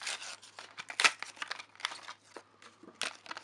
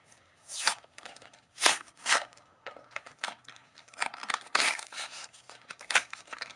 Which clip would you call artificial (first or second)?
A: second